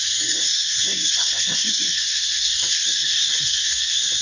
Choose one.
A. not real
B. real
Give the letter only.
A